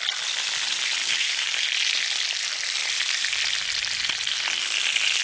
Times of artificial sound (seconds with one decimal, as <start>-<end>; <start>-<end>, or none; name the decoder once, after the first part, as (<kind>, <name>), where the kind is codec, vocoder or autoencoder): 1.0-1.6 (vocoder, BigVGAN v2)